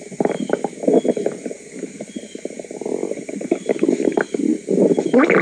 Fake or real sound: real